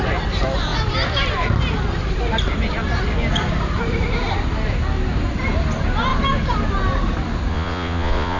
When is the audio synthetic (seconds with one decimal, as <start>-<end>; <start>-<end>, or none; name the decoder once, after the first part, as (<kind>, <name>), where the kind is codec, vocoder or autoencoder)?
7.5-8.4 (vocoder, Vocos)